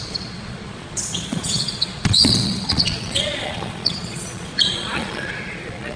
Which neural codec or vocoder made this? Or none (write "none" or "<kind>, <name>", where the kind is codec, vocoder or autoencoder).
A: vocoder, Vocos